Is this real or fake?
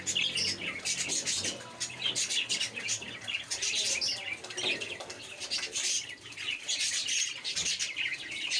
real